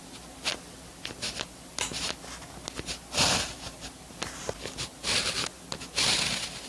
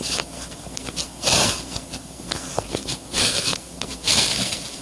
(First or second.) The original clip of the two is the first